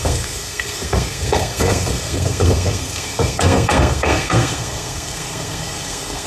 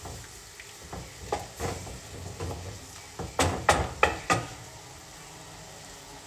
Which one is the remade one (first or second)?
first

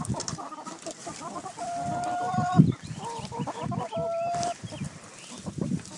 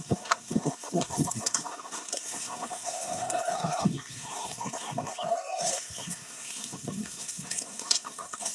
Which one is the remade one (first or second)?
second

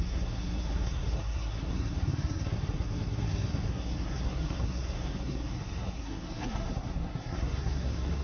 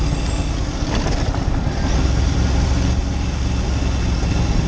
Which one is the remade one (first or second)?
first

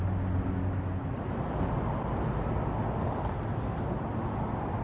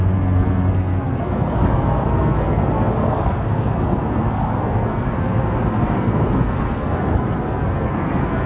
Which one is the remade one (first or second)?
second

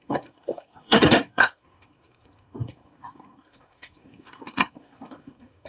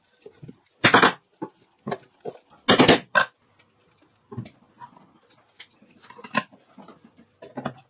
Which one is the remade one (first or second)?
first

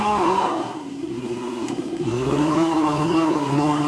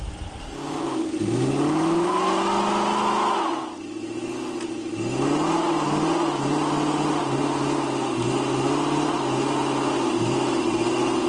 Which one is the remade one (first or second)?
first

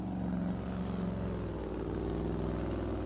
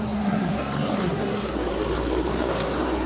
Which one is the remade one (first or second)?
second